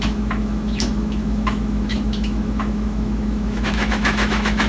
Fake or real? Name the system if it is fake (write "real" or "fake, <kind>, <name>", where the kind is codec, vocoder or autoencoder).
fake, autoencoder, DAC-VAE